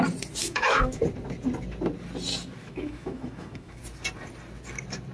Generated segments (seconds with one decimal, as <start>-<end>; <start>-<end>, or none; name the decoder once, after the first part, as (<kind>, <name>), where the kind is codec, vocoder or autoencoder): 0.4-1.0 (autoencoder, DAC-VAE); 2.6-3.8